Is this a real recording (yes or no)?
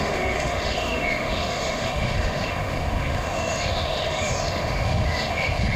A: no